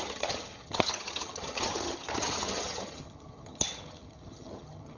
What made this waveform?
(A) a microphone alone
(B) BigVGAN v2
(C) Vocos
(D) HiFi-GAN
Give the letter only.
D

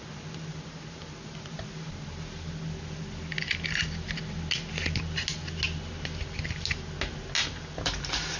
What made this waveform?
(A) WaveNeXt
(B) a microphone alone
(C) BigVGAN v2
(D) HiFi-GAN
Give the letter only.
B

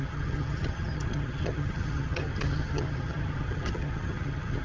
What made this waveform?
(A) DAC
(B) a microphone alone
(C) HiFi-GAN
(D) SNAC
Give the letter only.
C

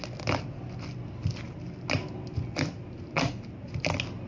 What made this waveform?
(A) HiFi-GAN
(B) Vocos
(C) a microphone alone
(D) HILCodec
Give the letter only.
C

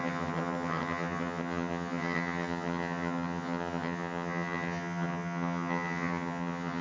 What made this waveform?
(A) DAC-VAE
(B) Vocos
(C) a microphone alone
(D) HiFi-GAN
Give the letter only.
D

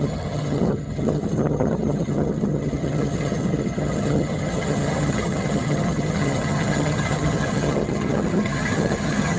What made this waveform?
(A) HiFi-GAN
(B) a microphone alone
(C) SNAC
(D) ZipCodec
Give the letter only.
A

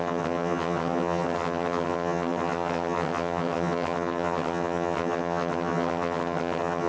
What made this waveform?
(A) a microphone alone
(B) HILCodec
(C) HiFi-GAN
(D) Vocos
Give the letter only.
C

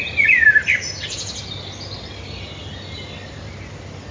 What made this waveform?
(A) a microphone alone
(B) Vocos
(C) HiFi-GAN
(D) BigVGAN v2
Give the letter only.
A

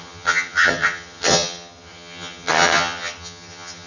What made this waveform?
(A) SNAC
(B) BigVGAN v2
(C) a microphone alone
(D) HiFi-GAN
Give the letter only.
D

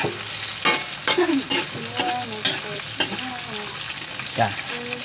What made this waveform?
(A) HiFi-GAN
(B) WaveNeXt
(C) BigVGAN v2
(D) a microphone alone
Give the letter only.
D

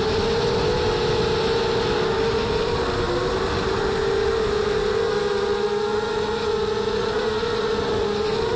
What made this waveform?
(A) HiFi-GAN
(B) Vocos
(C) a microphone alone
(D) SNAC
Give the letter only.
C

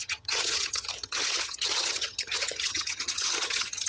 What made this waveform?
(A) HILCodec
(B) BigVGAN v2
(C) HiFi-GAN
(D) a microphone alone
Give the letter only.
C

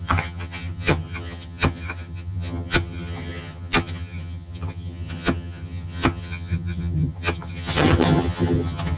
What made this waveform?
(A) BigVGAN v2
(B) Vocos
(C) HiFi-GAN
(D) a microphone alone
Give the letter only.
C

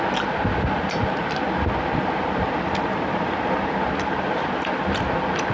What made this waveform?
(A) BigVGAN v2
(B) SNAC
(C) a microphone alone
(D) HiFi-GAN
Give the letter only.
C